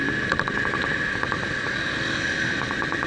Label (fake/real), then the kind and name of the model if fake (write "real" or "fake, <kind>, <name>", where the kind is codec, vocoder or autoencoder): real